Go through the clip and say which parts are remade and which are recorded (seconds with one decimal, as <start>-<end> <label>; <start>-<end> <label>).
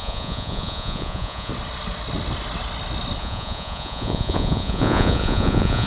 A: 0.0-1.5 remade; 1.5-3.2 recorded; 3.2-5.9 remade